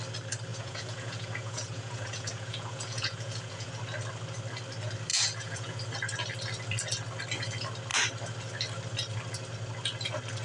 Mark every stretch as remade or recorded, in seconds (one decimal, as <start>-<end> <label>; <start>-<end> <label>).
0.0-0.5 recorded; 0.5-3.7 remade; 3.7-5.1 recorded; 5.1-5.8 remade; 5.8-10.4 recorded